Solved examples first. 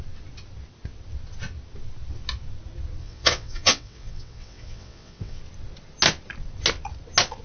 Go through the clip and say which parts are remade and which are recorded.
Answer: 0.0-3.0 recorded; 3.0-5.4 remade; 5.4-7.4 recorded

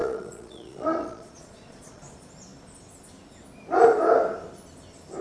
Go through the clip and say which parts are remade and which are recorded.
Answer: 0.0-2.0 remade; 2.0-5.2 recorded